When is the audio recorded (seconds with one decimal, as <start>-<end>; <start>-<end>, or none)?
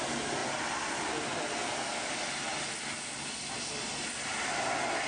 0.0-5.1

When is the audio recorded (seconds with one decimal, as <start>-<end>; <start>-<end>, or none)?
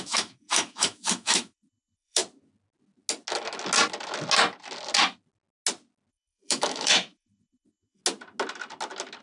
2.2-6.1; 8.0-9.2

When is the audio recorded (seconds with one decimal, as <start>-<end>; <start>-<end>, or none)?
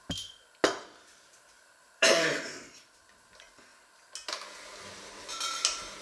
0.0-1.1; 2.3-6.0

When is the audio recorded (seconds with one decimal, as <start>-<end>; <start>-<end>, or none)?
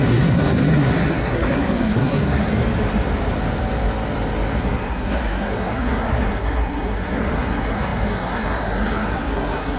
2.6-4.6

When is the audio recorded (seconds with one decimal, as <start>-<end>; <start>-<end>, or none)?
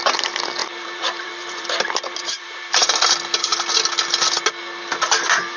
0.0-0.6; 3.0-5.6